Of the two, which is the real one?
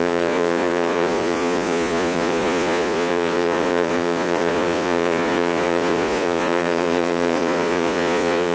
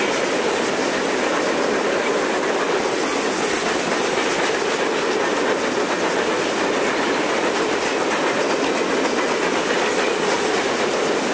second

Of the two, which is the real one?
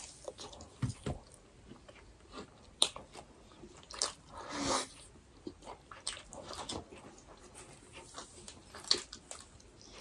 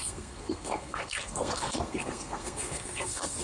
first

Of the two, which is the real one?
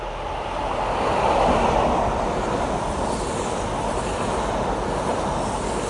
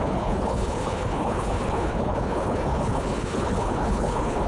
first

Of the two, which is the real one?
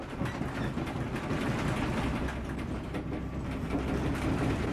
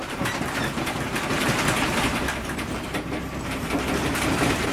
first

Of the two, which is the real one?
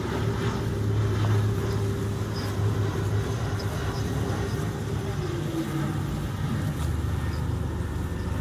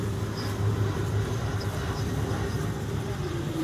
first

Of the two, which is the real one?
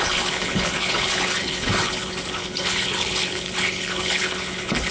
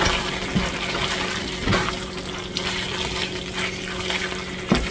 second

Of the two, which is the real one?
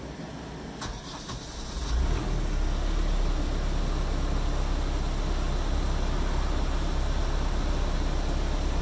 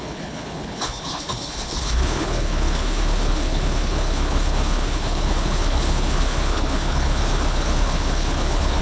first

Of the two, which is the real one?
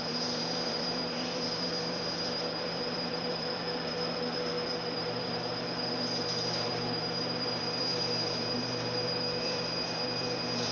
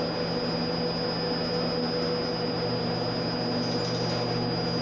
second